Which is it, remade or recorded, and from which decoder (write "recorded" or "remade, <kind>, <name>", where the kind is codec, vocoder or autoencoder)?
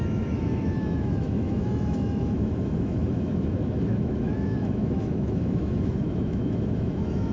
remade, autoencoder, DAC-VAE